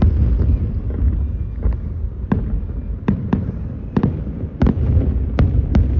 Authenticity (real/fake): real